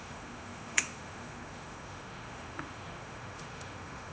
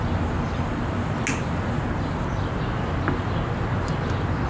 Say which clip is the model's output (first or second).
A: first